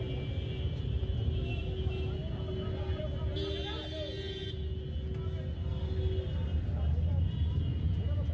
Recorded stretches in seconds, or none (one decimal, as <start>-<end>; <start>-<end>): 0.0-8.3